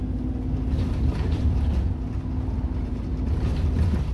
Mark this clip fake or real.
real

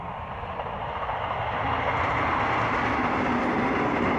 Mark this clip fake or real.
real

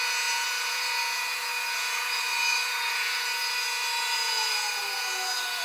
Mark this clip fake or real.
fake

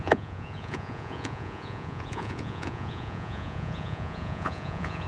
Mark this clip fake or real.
fake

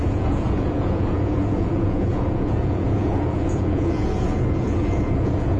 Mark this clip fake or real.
fake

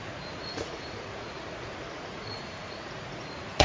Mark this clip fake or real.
fake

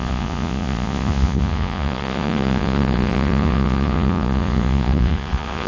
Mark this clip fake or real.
fake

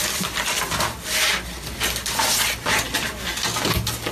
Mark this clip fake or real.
real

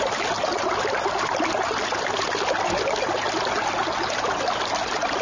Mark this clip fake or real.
real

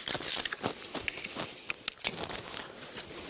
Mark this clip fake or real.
real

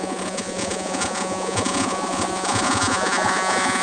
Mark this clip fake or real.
fake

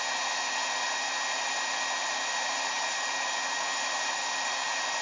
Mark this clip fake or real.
real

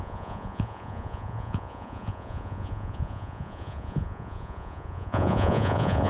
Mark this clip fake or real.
fake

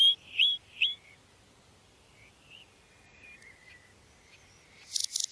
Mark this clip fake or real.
real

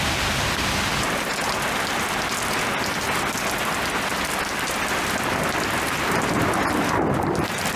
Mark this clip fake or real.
real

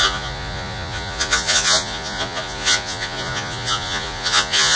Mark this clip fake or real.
fake